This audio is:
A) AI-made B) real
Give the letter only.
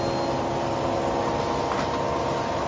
B